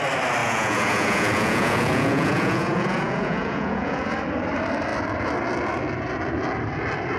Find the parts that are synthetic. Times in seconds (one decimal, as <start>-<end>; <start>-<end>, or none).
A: 0.4-4.2